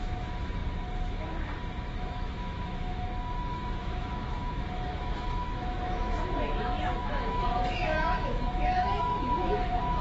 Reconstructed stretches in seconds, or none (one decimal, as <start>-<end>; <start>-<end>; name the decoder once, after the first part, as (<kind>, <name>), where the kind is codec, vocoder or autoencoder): 0.0-0.6 (autoencoder, DAC-VAE); 1.1-10.0